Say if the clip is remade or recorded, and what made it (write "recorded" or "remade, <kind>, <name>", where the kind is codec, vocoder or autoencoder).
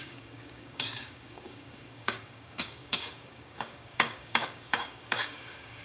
remade, codec, DAC